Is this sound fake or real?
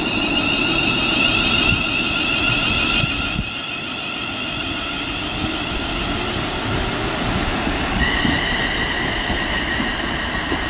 real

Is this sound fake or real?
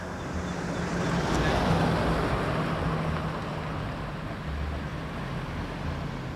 real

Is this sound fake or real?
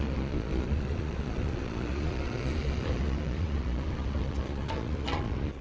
fake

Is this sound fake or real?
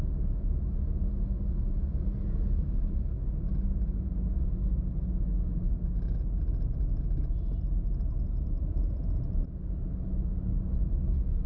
real